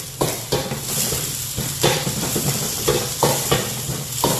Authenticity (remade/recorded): remade